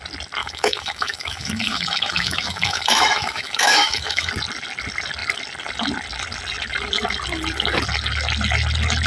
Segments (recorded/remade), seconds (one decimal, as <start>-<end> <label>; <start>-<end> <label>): 0.0-0.4 recorded; 0.4-4.3 remade; 4.3-9.1 recorded